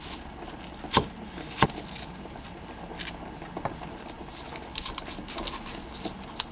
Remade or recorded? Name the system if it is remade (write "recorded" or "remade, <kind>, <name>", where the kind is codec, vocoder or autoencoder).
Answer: recorded